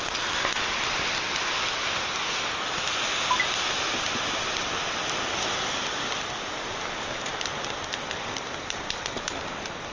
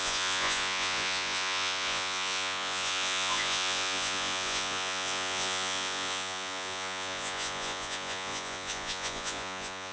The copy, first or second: second